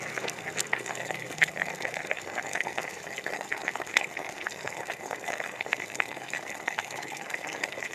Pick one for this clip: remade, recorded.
remade